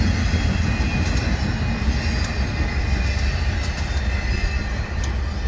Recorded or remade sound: recorded